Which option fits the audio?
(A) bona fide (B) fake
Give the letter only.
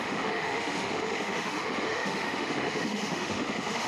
B